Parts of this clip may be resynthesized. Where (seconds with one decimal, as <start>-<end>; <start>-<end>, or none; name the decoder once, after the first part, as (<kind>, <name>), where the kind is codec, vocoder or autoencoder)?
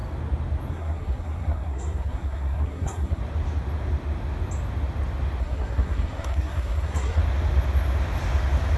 0.7-3.2 (codec, SNAC); 5.4-7.2